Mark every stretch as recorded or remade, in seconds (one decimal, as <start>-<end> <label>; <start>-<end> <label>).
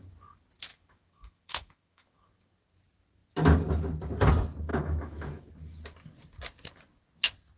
0.0-0.7 recorded; 0.7-2.3 remade; 2.3-4.7 recorded; 4.7-5.5 remade; 5.5-7.6 recorded